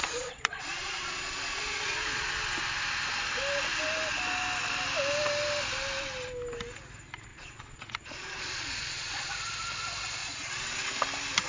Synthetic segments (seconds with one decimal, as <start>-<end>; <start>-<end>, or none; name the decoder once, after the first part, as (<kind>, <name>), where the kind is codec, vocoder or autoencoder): 0.0-2.3 (vocoder, Vocos); 7.3-9.3; 10.2-10.9